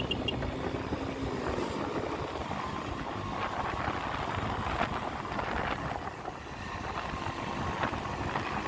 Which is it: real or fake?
real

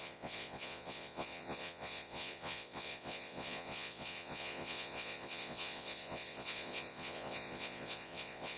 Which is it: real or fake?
fake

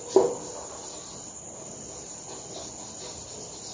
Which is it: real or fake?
real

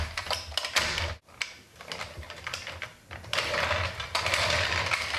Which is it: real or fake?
real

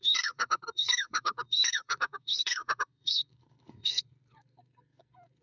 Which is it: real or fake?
fake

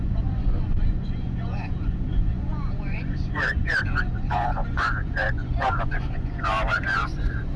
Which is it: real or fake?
fake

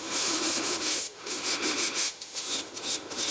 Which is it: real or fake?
fake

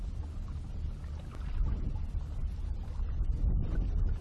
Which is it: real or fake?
real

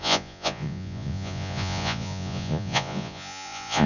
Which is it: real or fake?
fake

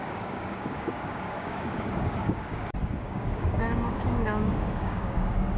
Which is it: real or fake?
fake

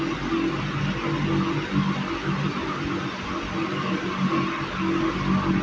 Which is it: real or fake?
real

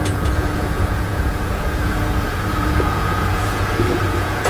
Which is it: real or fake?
fake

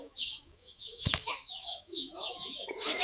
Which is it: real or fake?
fake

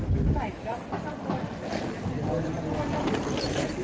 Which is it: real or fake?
real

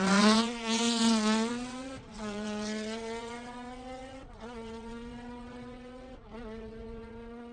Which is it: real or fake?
fake